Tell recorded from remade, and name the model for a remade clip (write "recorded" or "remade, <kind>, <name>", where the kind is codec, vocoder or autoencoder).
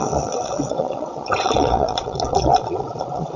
remade, vocoder, Vocos